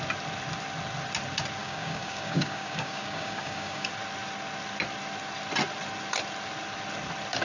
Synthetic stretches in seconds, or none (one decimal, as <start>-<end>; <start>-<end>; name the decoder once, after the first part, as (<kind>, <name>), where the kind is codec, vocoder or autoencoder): 1.6-3.9 (codec, DAC)